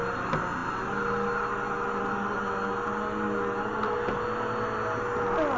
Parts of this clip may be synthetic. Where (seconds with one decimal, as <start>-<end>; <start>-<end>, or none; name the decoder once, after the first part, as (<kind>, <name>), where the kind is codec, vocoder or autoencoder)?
none